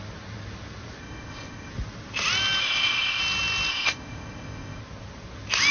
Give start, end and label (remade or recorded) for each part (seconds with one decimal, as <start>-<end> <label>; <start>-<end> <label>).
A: 0.0-1.0 recorded; 1.0-1.7 remade; 1.7-2.6 recorded; 2.6-3.2 remade; 3.2-3.7 recorded; 3.7-4.8 remade; 4.8-5.7 recorded